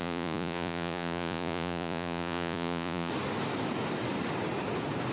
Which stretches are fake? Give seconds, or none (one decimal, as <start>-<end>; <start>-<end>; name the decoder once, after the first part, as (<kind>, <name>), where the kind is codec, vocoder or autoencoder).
0.0-3.1 (vocoder, Vocos)